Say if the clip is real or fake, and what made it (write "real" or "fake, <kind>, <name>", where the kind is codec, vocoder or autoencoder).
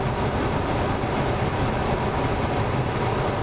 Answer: real